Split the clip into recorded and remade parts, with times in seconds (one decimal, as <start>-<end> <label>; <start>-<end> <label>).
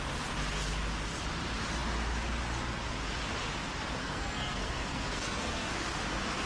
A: 0.0-4.0 recorded; 4.0-5.7 remade; 5.7-6.5 recorded